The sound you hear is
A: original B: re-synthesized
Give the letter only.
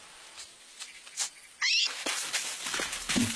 A